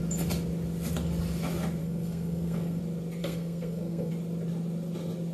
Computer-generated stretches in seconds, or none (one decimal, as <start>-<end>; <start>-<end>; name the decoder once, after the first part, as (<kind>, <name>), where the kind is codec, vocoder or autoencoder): 1.8-2.8 (codec, SNAC); 3.2-4.1